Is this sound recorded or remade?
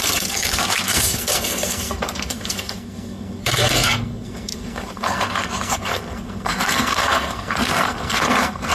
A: remade